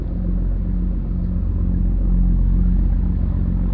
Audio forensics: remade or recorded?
recorded